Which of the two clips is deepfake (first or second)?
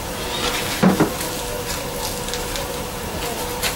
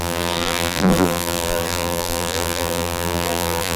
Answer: second